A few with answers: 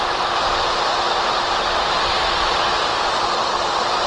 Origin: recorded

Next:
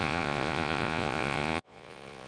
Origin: remade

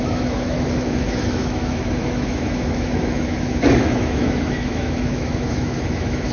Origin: remade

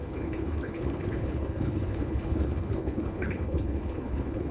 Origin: remade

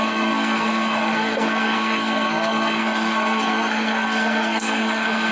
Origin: remade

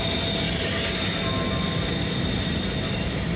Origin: recorded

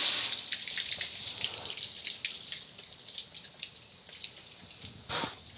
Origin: recorded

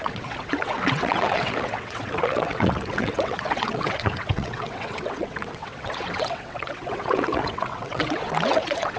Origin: remade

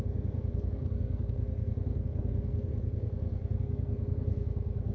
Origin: remade